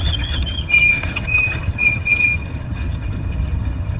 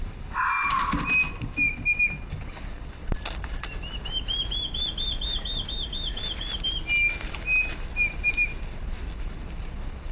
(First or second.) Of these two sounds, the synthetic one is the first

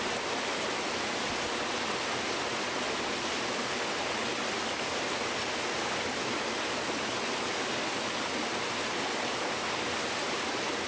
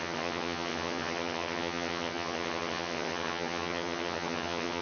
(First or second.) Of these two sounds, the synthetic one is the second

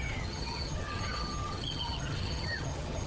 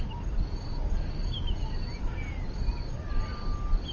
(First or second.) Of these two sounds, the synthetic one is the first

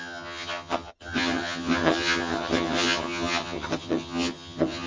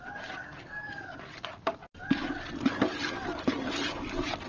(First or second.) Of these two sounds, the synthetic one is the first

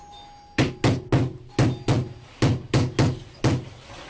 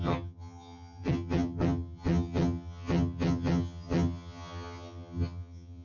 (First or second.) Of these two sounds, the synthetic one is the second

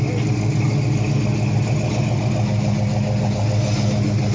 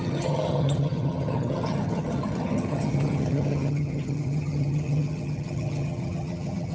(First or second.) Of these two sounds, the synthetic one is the second